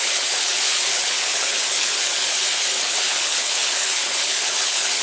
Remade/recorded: remade